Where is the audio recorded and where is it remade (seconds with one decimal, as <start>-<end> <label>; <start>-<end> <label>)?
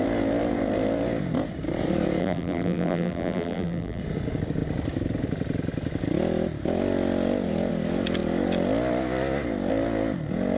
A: 0.0-2.2 recorded; 2.2-4.0 remade; 4.0-10.6 recorded